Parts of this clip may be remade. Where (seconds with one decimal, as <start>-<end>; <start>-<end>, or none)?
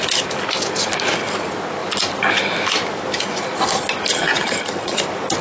4.1-5.0